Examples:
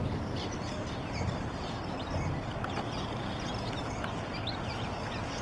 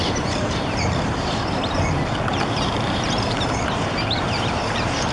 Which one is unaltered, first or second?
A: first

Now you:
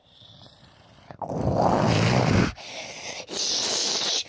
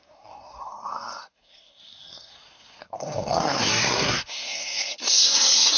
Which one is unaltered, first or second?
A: first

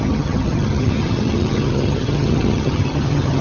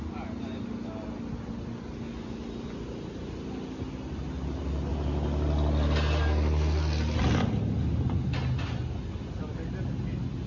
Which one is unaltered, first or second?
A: second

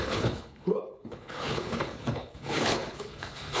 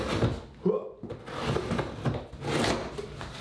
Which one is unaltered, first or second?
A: second